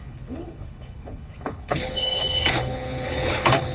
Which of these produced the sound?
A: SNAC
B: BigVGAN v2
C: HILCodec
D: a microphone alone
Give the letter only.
C